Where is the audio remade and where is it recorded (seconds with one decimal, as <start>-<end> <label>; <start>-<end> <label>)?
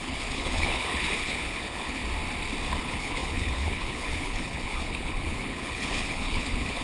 0.0-2.0 remade; 2.0-2.8 recorded; 2.8-6.8 remade